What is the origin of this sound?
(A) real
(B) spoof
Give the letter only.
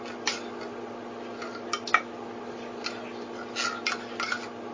A